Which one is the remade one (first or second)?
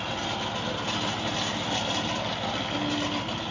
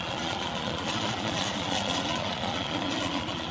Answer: second